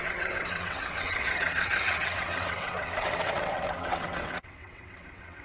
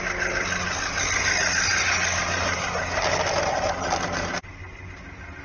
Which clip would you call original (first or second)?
second